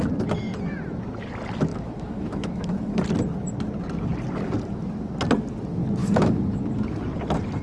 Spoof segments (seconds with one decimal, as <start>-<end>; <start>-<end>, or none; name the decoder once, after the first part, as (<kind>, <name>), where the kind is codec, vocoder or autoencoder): 1.7-3.0 (autoencoder, DAC-VAE); 6.0-6.6